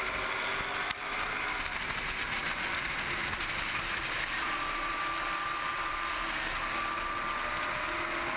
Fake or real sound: real